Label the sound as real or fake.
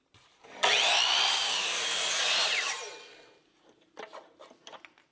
real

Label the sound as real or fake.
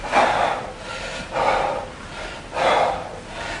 real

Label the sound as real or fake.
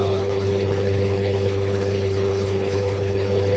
fake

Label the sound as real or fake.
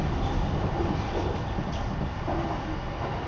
real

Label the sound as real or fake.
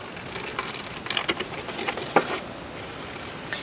real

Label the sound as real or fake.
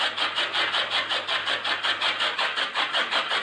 real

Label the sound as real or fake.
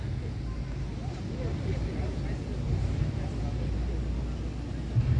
real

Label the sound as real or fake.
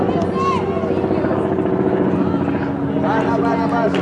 real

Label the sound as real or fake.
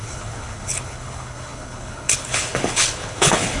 fake